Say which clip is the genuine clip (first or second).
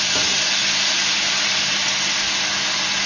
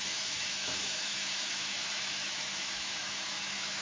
first